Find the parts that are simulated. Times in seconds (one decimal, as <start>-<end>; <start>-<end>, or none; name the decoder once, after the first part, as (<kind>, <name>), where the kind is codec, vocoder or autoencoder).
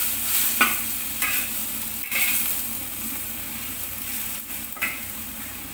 1.1-1.6 (vocoder, BigVGAN v2); 3.0-5.7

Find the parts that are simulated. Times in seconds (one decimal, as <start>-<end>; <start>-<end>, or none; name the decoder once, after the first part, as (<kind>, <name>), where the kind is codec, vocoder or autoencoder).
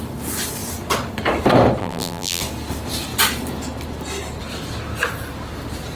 1.8-2.4 (vocoder, BigVGAN v2)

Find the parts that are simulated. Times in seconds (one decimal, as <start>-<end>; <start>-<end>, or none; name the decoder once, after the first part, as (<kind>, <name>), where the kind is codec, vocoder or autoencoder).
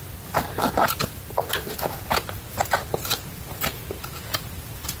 none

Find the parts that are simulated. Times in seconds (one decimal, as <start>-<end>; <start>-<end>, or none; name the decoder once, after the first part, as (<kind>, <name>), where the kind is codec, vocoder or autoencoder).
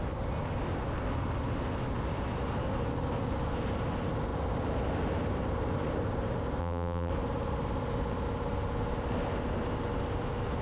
6.6-7.1 (vocoder, BigVGAN v2)